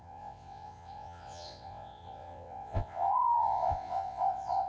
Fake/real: fake